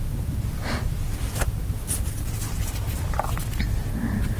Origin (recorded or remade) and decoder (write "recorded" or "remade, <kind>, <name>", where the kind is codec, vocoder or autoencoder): recorded